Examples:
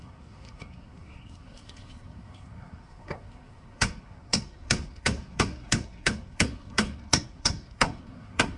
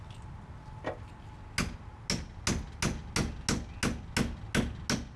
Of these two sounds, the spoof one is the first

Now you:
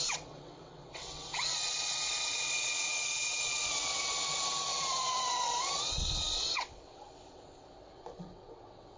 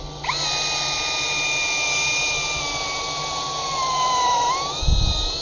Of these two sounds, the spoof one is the first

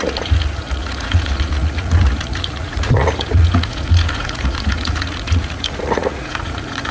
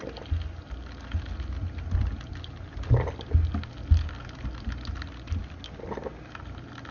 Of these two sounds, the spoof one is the first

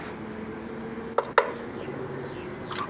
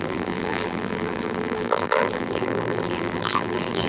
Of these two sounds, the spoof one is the second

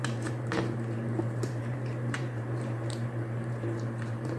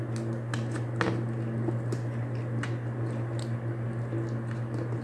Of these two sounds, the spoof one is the first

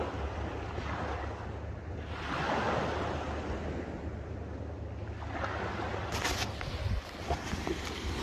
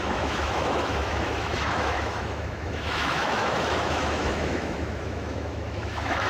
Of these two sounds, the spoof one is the second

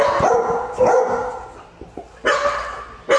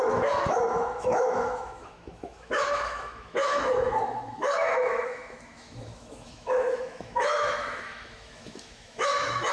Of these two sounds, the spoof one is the second